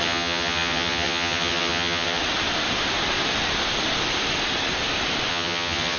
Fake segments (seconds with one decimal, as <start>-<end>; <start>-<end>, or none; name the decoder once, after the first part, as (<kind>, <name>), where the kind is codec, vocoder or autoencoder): 0.0-2.2 (vocoder, HiFi-GAN); 5.3-6.0